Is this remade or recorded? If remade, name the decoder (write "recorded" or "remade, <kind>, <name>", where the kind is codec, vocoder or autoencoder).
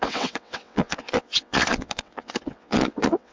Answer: remade, vocoder, WaveNeXt